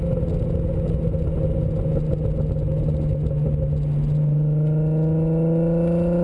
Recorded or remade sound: recorded